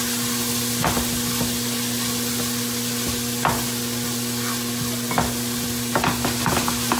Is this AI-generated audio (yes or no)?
no